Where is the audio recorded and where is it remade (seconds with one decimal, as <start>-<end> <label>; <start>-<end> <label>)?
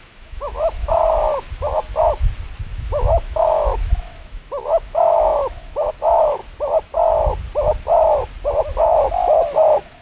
0.0-1.0 remade; 1.0-2.6 recorded; 2.6-6.4 remade; 6.4-9.1 recorded; 9.1-10.0 remade